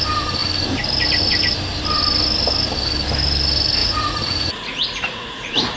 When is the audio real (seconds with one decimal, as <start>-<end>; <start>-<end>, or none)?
0.0-3.8

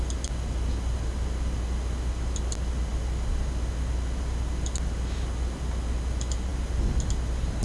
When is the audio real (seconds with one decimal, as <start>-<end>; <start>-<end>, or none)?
0.0-7.6

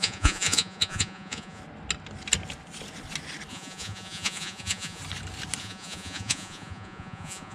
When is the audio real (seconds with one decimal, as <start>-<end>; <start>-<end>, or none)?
1.6-3.5; 5.0-5.6

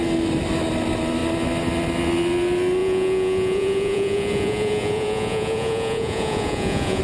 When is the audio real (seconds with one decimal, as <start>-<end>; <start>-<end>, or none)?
0.0-2.8

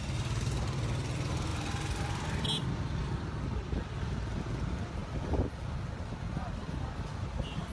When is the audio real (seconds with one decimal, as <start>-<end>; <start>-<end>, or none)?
0.0-7.7

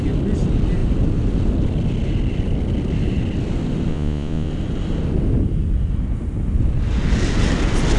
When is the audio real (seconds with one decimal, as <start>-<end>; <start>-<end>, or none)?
0.0-3.9; 4.5-8.0

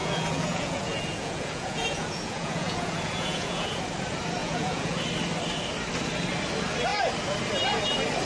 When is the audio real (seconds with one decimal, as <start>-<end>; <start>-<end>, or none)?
3.8-4.4; 5.0-8.2